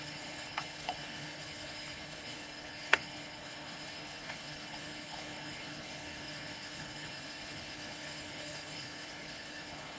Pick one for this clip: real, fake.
fake